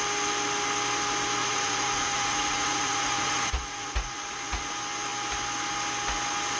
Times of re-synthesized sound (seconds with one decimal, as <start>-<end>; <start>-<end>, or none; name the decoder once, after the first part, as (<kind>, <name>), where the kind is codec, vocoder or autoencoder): 1.4-4.6 (vocoder, Vocos)